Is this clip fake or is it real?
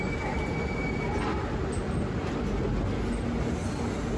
real